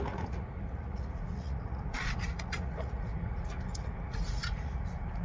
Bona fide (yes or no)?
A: no